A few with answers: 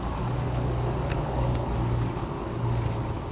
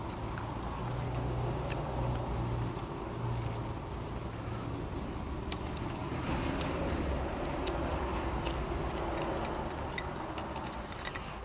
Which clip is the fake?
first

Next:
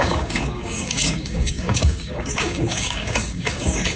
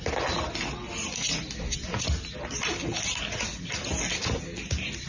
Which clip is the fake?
first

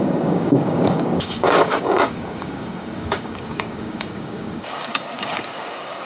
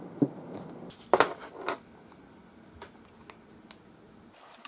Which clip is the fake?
first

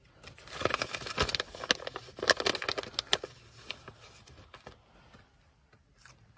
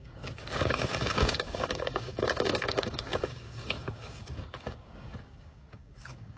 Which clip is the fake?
second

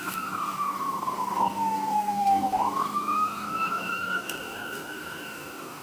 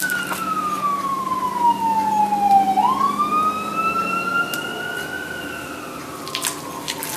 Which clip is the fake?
first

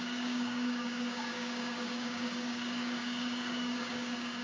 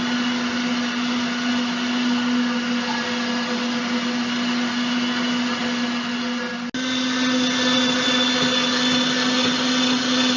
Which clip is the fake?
first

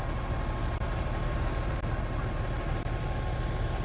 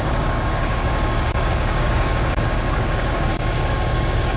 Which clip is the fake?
second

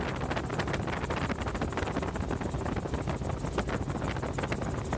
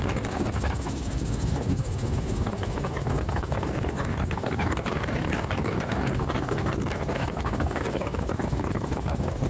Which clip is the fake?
second